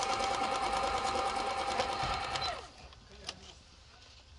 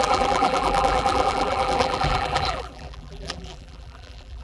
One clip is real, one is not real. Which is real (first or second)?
first